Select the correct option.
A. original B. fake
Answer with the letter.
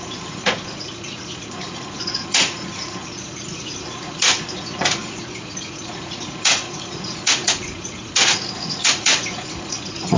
B